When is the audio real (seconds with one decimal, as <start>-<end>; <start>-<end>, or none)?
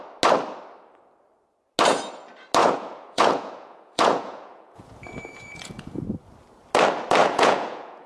0.0-2.6; 6.0-7.2